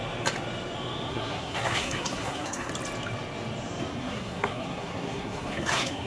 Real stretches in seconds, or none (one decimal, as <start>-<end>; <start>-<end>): 0.0-1.1; 2.7-4.0